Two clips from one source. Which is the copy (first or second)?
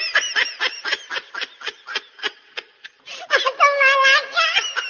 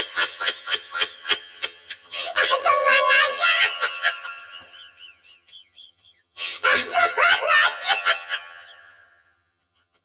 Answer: second